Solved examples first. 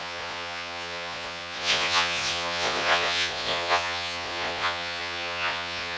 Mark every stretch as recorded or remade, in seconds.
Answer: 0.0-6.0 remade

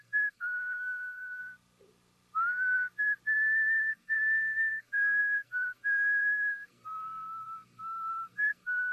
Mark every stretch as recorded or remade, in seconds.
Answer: 0.0-1.4 remade; 1.4-3.9 recorded; 3.9-8.9 remade

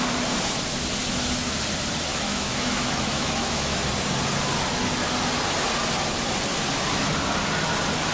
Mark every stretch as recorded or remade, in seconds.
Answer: 0.0-2.1 recorded; 2.1-3.8 remade; 3.8-8.1 recorded

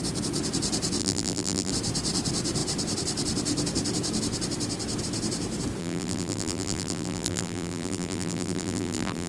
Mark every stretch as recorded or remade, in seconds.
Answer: 0.0-1.0 recorded; 1.0-1.7 remade; 1.7-5.8 recorded; 5.8-9.3 remade

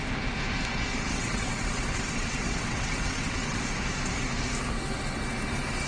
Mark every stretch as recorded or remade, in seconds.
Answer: 0.0-1.1 recorded; 1.1-3.6 remade; 3.6-5.9 recorded

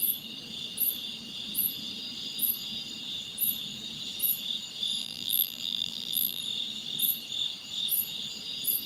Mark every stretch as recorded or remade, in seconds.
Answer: 0.0-5.0 recorded; 5.0-6.4 remade; 6.4-8.9 recorded

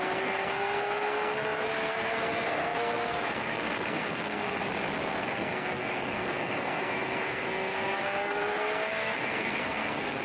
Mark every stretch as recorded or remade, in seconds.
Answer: 0.0-4.6 remade; 4.6-5.1 recorded; 5.1-10.2 remade